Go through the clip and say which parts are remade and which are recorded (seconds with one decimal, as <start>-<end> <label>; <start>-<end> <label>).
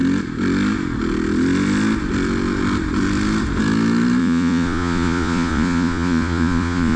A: 0.0-4.2 recorded; 4.2-7.0 remade